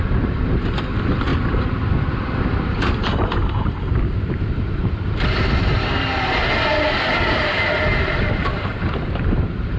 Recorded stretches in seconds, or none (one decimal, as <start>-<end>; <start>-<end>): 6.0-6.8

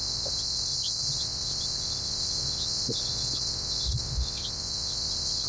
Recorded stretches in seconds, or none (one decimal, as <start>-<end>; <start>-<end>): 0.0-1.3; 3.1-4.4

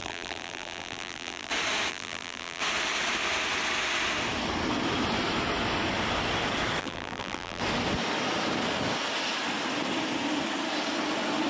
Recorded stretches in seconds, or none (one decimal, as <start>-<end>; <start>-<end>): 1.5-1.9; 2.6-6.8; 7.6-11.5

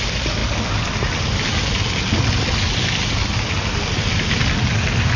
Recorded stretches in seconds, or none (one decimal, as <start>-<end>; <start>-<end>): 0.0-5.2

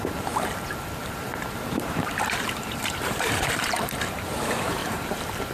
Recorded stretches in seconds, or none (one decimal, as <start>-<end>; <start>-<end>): 0.0-1.0; 4.3-4.8

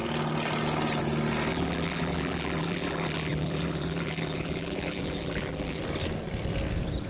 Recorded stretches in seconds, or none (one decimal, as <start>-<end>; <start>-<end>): 0.0-1.5; 5.8-7.1

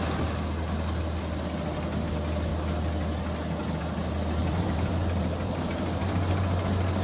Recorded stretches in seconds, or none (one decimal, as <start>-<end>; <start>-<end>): 0.0-4.4; 6.4-7.0